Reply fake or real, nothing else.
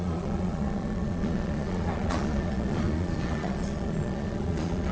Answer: fake